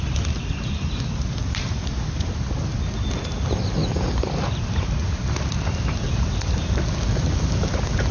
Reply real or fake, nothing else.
real